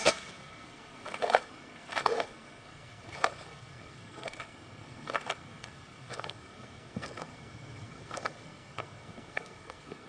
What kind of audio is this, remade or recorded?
remade